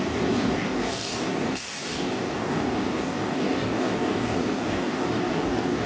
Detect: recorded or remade remade